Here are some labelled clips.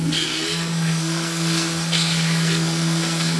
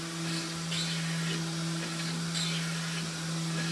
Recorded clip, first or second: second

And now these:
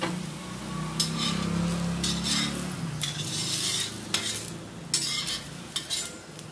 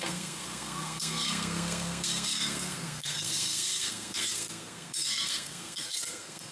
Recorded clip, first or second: first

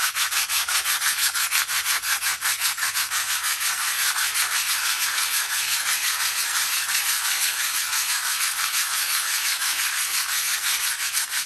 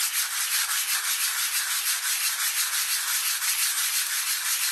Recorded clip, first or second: second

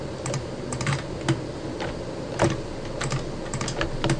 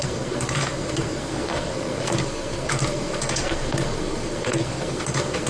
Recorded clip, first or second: first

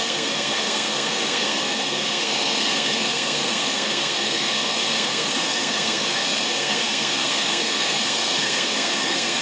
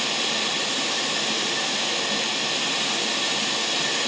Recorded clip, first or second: second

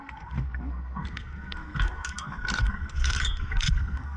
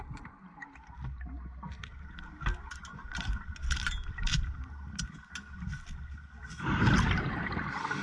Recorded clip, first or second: second